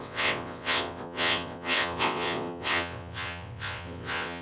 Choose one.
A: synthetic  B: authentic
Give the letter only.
A